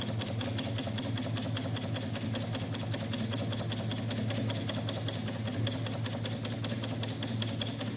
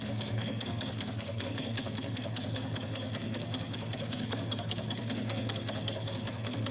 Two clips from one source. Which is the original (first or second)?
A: first